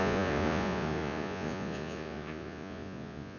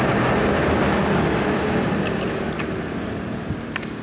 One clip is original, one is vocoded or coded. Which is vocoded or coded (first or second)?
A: first